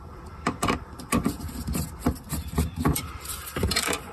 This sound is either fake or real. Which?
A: fake